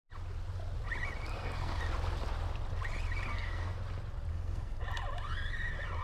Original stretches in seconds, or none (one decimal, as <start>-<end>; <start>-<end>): 0.0-1.3; 1.8-3.3; 3.8-4.3; 4.8-6.0

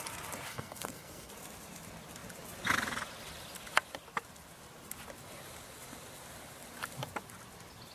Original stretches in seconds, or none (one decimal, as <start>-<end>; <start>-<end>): 0.0-0.5; 1.3-7.9

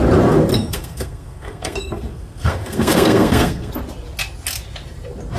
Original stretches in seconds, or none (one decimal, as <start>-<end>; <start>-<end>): 0.0-0.5; 3.7-5.4